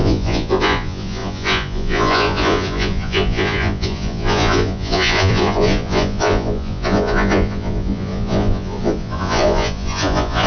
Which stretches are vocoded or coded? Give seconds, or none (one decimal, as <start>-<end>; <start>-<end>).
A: 0.0-10.5